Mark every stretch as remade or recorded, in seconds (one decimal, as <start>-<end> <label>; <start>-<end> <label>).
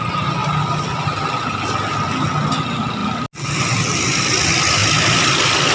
0.0-5.7 recorded